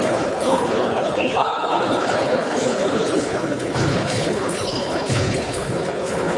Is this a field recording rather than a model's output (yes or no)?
no